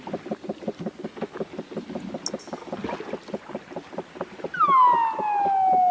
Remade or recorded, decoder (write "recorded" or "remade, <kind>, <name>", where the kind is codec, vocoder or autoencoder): recorded